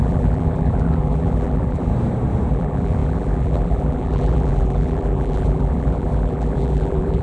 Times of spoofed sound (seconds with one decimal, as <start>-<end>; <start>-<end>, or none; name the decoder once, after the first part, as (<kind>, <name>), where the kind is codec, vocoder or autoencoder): 0.0-1.9 (vocoder, BigVGAN v2); 2.5-7.2